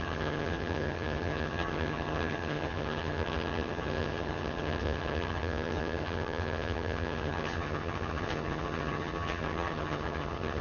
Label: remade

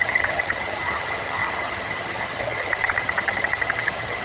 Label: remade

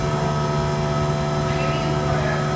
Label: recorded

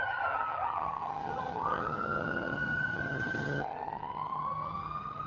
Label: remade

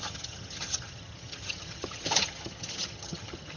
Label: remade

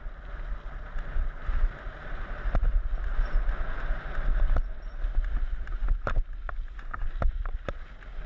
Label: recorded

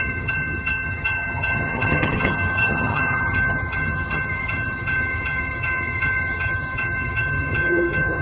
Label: remade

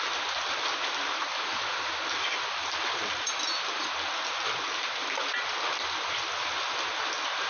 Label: recorded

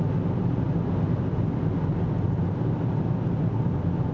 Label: recorded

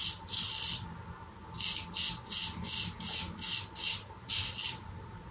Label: recorded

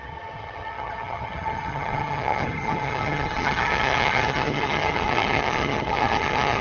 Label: remade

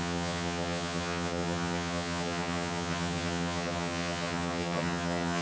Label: remade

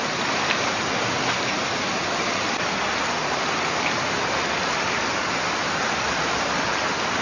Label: recorded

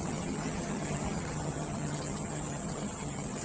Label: remade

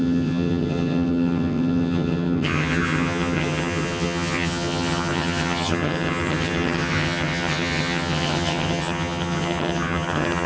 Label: remade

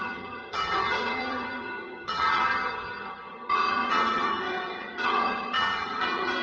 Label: remade